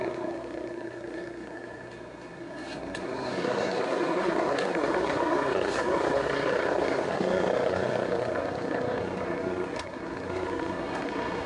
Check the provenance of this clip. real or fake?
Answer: fake